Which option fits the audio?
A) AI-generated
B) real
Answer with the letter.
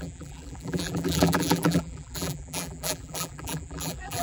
A